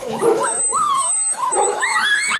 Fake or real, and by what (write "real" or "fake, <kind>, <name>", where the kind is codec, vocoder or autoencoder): fake, autoencoder, DAC-VAE